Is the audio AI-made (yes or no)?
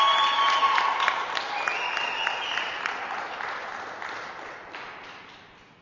no